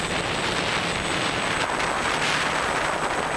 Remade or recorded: recorded